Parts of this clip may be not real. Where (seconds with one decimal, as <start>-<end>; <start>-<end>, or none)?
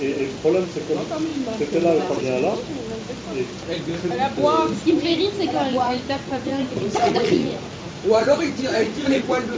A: 5.7-9.2